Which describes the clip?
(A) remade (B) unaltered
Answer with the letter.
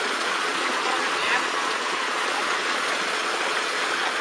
A